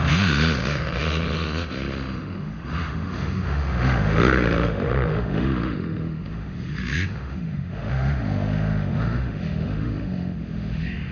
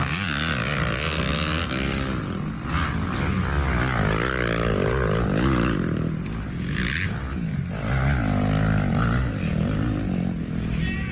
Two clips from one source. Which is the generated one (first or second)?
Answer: first